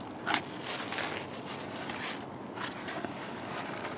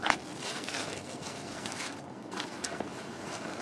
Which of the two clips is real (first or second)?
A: first